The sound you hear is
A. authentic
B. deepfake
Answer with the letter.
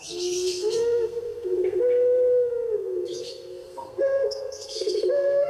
B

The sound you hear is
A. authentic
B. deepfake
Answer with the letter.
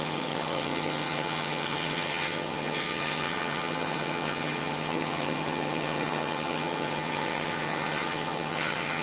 B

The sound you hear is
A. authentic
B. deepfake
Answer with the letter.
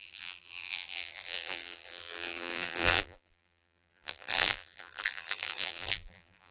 B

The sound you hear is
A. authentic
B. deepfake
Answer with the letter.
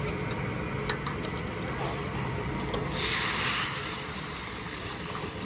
A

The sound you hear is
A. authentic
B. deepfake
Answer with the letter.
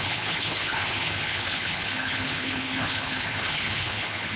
B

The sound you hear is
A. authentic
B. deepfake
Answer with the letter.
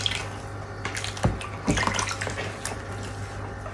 A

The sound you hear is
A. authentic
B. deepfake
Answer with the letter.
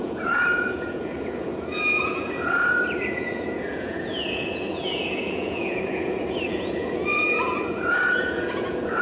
B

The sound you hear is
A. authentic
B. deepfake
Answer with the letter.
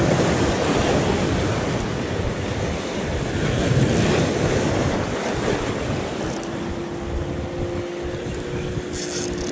A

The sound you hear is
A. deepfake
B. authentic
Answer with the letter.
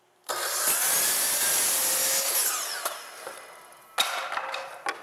B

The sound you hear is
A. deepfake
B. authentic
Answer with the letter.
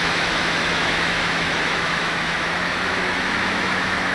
A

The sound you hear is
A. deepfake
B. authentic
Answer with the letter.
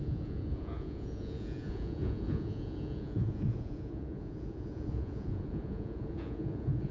A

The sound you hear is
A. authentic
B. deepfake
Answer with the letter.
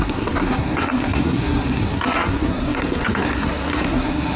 B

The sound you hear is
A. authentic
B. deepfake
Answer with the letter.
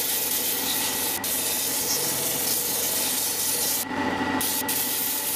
A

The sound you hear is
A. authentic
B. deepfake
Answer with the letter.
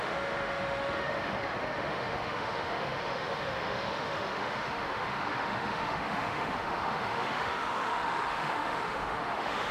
B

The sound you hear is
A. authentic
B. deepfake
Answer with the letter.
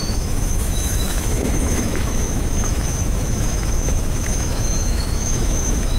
B